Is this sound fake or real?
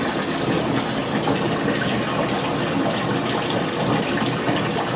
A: real